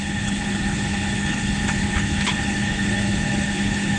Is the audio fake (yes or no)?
yes